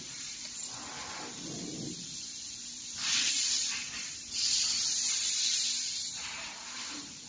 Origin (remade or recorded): remade